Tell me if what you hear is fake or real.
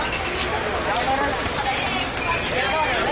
real